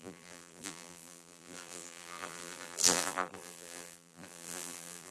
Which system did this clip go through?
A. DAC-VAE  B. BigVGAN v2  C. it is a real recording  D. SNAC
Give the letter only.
B